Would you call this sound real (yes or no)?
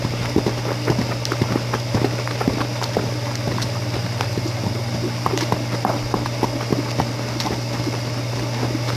yes